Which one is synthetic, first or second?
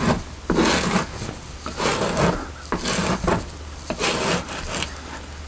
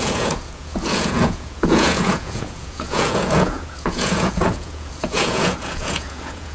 second